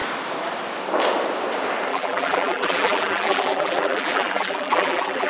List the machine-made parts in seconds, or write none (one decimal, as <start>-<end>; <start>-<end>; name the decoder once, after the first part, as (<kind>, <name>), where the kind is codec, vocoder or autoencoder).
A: 1.9-5.3 (vocoder, BigVGAN v2)